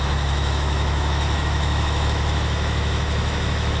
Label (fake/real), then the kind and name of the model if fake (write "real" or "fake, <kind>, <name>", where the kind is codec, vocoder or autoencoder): fake, autoencoder, DAC-VAE